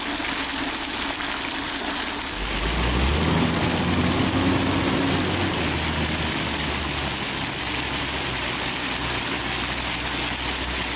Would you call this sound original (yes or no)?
yes